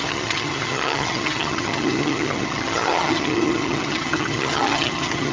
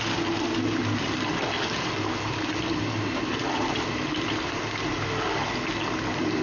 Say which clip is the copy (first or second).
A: first